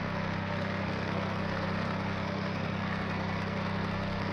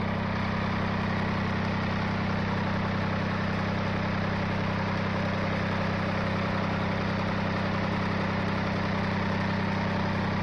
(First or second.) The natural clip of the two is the second